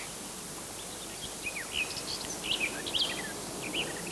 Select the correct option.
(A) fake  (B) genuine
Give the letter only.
B